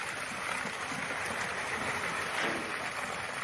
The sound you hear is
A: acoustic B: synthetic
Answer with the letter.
A